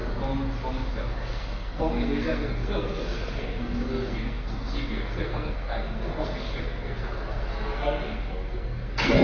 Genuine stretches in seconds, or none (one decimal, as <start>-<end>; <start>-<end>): 0.0-0.9